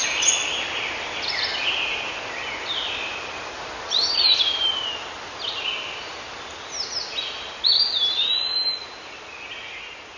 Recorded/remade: recorded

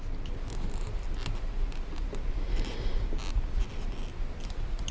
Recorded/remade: recorded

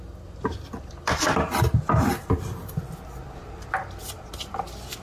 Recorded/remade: remade